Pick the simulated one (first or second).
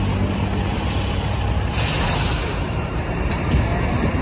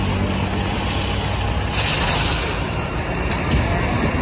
first